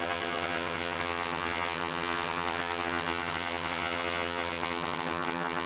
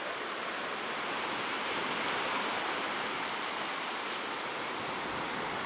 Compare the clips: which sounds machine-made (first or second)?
first